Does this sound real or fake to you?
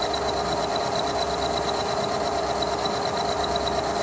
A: real